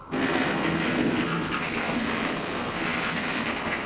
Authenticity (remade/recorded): remade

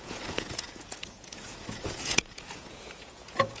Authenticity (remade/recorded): remade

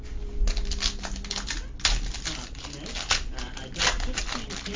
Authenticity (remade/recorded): recorded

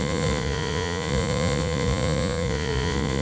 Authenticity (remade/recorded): remade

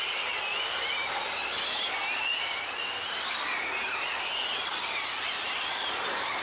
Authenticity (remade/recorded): recorded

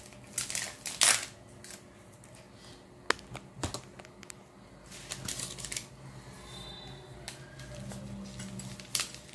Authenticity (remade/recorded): recorded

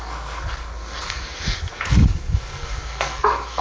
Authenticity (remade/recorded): remade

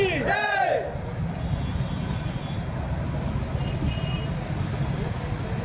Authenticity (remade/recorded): recorded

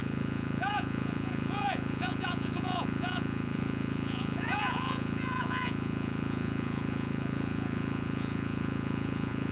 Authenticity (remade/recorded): remade